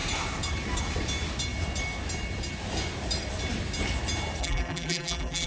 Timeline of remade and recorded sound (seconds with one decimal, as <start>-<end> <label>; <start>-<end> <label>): 0.0-4.4 recorded; 4.4-5.5 remade